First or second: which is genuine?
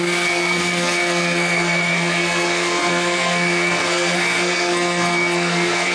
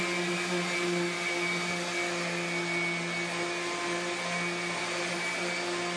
second